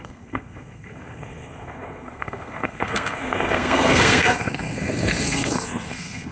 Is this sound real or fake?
fake